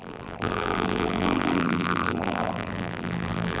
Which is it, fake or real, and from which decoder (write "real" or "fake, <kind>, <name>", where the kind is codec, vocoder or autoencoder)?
fake, vocoder, BigVGAN v2